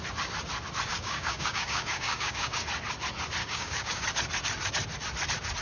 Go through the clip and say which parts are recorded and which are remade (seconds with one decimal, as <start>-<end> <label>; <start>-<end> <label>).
0.0-0.9 recorded; 0.9-2.6 remade; 2.6-3.4 recorded; 3.4-4.0 remade; 4.0-5.6 recorded